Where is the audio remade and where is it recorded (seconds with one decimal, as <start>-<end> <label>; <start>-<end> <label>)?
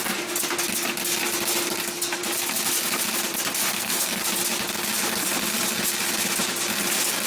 0.0-3.7 recorded; 3.7-4.2 remade; 4.2-7.3 recorded